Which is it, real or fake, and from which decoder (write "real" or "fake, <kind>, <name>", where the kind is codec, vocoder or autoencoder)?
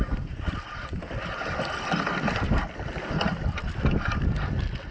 real